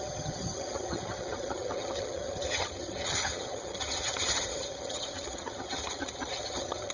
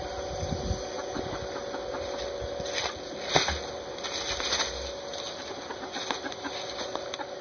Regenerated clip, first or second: first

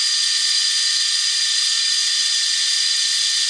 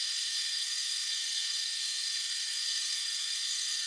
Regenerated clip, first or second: second